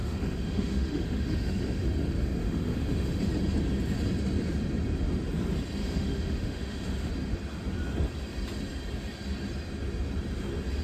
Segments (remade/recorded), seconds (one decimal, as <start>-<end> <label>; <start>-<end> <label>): 0.0-3.2 remade; 3.2-5.8 recorded; 5.8-7.1 remade; 7.1-10.8 recorded